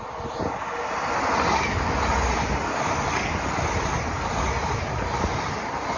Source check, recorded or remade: recorded